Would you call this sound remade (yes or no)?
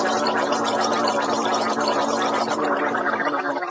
no